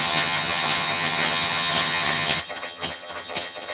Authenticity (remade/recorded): remade